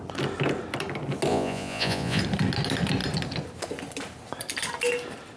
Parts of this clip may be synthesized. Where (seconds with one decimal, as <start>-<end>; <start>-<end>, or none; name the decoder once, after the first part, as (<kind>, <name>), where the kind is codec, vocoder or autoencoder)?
1.3-2.2 (vocoder, Vocos)